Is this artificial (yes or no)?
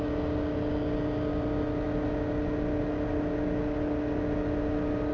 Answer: no